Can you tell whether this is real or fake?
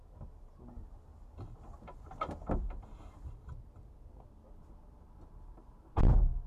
real